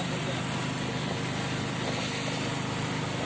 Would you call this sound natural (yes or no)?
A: yes